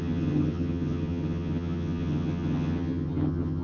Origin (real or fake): fake